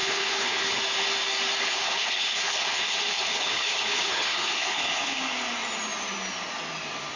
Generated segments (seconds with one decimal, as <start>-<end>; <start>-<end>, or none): 0.0-0.8; 1.6-5.2